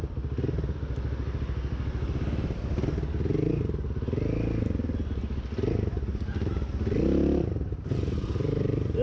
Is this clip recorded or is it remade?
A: recorded